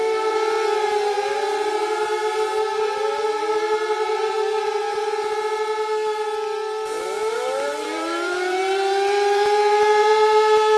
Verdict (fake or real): fake